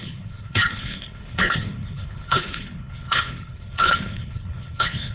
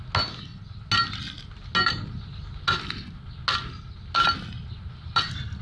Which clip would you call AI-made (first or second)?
first